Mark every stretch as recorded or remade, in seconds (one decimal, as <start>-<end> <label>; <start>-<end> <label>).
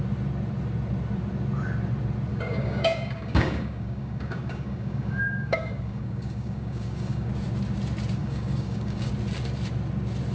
0.0-2.3 recorded; 2.3-7.3 remade; 7.3-8.2 recorded; 8.2-9.1 remade; 9.1-10.3 recorded